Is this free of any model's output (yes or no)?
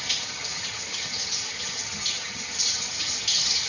no